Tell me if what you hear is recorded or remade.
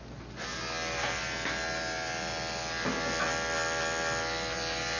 recorded